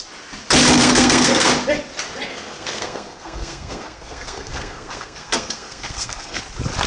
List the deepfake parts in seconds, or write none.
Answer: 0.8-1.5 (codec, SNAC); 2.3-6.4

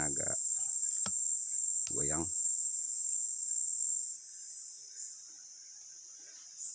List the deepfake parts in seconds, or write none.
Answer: none

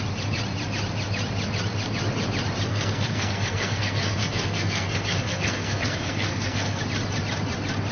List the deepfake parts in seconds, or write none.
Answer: 2.7-6.8 (codec, SNAC)